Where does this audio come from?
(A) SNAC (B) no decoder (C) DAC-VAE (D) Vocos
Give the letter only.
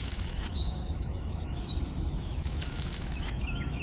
C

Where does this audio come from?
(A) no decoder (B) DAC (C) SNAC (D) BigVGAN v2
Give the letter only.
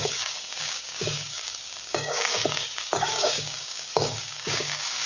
B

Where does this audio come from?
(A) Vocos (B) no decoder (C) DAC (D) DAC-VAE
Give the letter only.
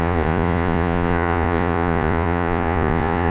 A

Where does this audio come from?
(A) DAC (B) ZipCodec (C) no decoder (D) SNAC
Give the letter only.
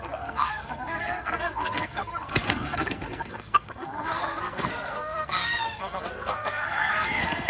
D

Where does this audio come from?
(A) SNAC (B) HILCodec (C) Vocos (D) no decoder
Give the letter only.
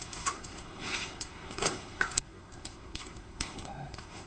A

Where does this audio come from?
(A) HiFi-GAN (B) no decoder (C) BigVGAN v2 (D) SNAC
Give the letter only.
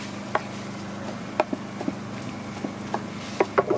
B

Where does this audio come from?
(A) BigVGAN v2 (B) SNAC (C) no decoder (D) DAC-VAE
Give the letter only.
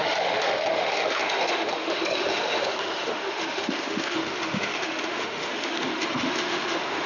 D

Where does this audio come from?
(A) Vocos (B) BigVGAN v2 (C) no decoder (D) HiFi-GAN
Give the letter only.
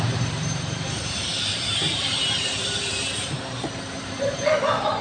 B